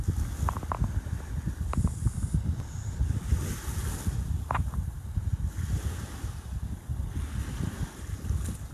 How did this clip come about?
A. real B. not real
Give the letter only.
A